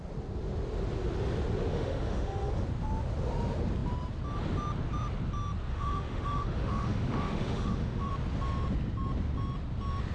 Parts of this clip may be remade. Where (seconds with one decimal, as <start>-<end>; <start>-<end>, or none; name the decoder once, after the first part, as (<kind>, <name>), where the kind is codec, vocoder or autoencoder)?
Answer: 1.7-2.5 (autoencoder, DAC-VAE); 5.7-8.1

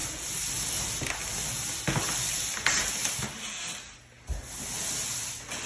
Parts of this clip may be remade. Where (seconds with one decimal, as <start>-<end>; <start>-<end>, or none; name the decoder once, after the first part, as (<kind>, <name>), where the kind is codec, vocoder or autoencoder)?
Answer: none

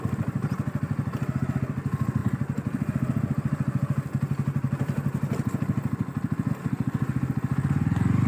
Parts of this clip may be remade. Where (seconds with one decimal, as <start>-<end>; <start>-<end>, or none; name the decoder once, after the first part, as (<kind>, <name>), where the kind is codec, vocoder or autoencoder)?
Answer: none

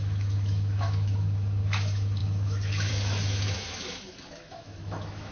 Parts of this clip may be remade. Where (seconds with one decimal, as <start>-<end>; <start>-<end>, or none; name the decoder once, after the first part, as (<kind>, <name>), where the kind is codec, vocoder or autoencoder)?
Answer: 0.0-5.3 (autoencoder, DAC-VAE)

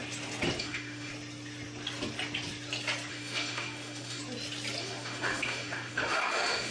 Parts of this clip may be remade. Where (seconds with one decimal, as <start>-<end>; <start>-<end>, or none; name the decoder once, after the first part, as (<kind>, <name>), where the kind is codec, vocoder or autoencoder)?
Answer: 0.6-1.1 (autoencoder, DAC-VAE); 3.1-4.2; 4.8-6.7

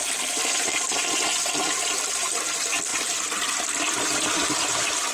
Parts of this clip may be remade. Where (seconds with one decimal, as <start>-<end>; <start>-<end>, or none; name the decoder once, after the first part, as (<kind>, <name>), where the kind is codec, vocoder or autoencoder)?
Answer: none

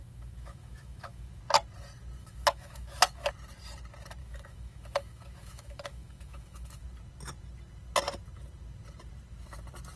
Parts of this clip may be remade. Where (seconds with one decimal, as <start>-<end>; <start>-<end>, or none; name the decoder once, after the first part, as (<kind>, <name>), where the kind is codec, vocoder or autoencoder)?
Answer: 0.0-1.4 (autoencoder, DAC-VAE); 2.2-3.3; 4.2-6.8

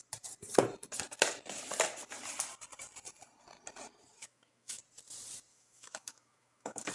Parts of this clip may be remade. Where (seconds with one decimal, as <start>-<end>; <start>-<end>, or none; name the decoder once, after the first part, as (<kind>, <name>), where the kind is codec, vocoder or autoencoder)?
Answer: 4.2-4.8 (autoencoder, DAC-VAE); 5.5-6.9